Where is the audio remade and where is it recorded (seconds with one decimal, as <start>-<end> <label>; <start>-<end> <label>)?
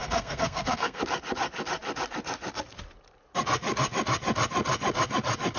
0.0-1.0 remade; 1.0-5.6 recorded